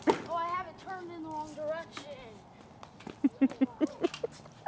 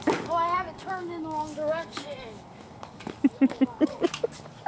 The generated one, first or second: second